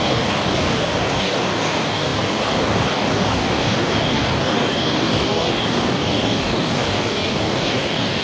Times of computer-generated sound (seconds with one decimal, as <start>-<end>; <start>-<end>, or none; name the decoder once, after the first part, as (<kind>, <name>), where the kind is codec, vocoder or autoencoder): 0.0-8.2 (codec, DAC)